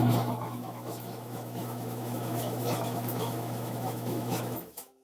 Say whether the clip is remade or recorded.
remade